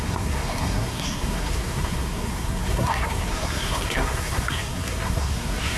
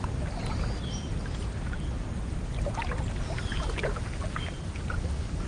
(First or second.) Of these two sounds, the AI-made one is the first